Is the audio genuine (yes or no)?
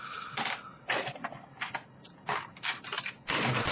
yes